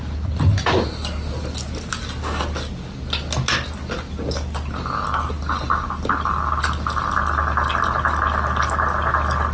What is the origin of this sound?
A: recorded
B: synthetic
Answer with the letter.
A